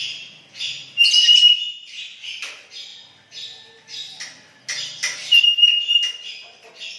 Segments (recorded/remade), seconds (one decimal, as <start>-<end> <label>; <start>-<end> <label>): 0.0-7.0 recorded